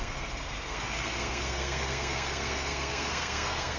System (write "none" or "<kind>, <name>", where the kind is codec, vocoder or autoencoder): codec, SNAC